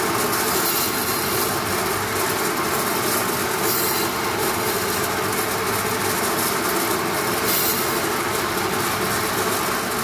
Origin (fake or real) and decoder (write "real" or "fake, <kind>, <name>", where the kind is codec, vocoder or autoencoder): real